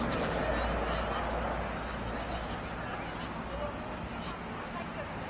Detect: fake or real real